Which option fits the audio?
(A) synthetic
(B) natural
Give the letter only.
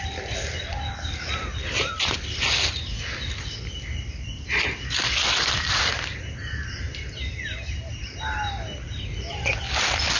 B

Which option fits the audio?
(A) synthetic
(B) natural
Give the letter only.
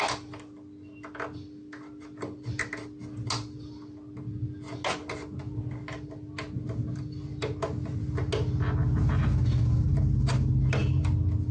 B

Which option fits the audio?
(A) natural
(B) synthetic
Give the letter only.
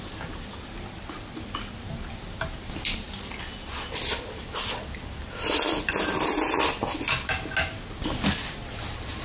A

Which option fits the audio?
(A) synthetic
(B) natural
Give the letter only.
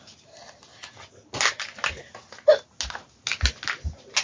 B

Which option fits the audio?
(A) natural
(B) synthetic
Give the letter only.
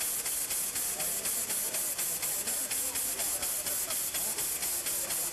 A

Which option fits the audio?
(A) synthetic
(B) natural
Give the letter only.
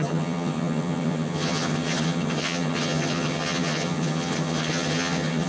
A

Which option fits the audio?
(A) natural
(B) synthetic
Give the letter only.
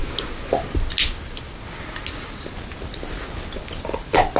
A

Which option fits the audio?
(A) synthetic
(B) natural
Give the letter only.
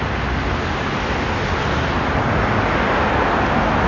B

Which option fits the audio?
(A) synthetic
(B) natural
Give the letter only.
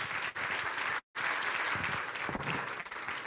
B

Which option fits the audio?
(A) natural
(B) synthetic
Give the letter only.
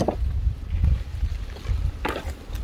A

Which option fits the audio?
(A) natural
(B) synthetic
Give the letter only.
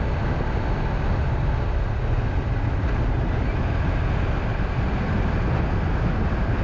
A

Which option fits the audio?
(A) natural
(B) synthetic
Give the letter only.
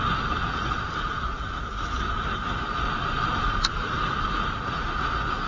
A